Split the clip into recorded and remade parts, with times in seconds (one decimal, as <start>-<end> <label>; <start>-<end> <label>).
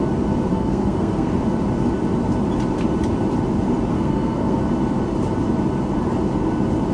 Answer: 0.0-0.5 recorded; 0.5-1.3 remade; 1.3-3.9 recorded; 3.9-4.6 remade; 4.6-6.9 recorded